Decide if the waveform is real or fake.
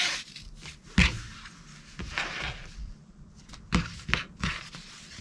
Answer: real